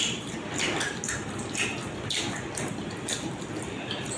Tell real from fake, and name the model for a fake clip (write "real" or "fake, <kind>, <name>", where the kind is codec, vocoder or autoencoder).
real